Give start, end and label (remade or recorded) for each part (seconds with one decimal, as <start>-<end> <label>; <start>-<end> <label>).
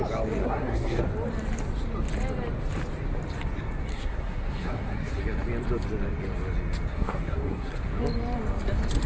0.0-0.4 recorded; 0.4-1.0 remade; 1.0-3.9 recorded; 3.9-5.2 remade; 5.2-6.9 recorded; 6.9-7.8 remade; 7.8-9.1 recorded